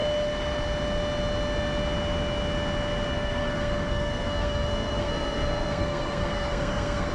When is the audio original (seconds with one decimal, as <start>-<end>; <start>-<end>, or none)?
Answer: 0.0-3.1